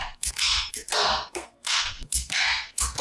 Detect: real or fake fake